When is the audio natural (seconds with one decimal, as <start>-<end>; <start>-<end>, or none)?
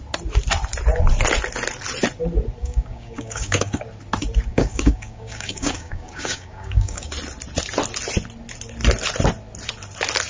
0.0-2.6; 3.8-4.5; 7.1-10.3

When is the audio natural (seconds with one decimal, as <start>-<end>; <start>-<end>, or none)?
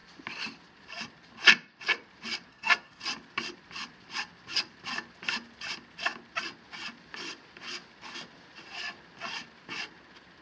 0.0-2.5; 3.0-10.4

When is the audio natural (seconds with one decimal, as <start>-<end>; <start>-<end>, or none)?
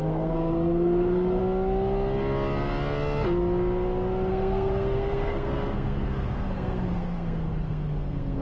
1.4-4.3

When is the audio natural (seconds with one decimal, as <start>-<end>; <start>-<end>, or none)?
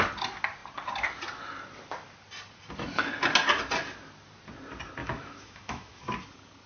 0.0-5.0; 6.0-6.7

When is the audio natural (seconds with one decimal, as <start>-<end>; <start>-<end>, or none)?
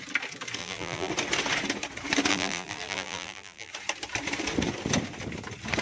0.0-0.6; 1.1-2.3; 3.7-5.8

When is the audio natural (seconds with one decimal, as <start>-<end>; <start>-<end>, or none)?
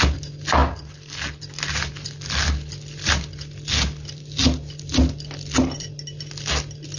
0.0-7.0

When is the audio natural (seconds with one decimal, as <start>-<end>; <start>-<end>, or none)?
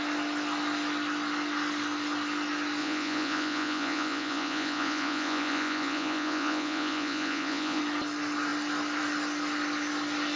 0.0-2.8; 7.8-10.4